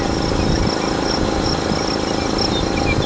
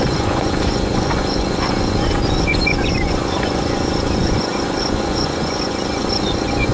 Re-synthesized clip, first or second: second